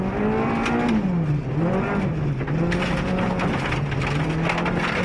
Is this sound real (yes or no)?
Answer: yes